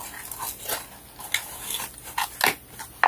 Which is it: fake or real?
real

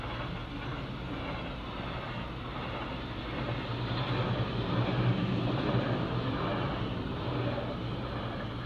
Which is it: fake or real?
real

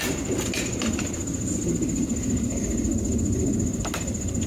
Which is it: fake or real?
real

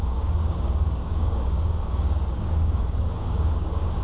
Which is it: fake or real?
fake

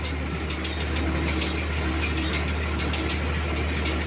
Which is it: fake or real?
real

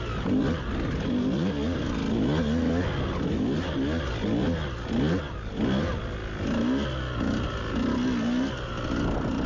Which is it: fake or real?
real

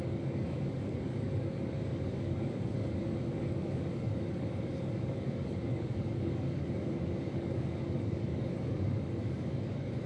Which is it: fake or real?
fake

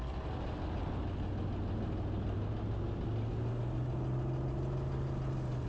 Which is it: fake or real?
real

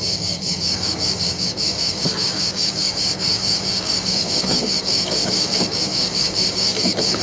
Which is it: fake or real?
fake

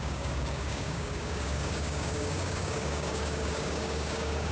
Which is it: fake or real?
fake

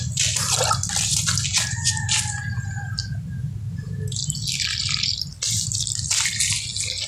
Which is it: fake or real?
real